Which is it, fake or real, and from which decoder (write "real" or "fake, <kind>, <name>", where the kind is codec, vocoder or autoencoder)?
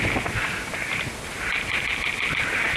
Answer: real